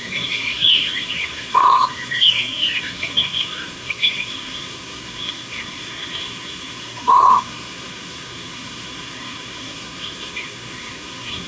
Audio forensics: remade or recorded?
remade